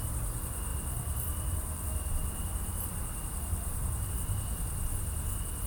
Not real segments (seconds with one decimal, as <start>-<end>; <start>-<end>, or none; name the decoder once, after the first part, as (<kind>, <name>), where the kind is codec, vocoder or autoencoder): 0.7-4.1 (vocoder, BigVGAN v2)